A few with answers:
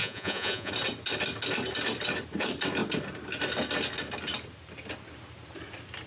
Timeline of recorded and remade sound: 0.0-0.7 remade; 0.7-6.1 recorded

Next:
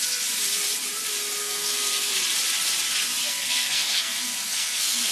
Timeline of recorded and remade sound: 0.0-1.4 recorded; 1.4-2.1 remade; 2.1-3.2 recorded; 3.2-5.1 remade

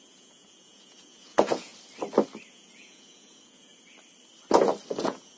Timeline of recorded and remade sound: 0.0-1.7 remade; 1.7-2.5 recorded; 2.5-3.7 remade; 3.7-5.0 recorded; 5.0-5.4 remade

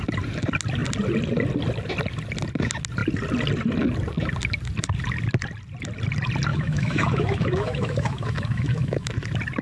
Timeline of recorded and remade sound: 0.0-6.5 recorded; 6.5-9.1 remade; 9.1-9.6 recorded